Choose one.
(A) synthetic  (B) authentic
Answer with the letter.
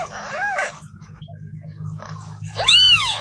A